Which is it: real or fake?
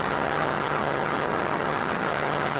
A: fake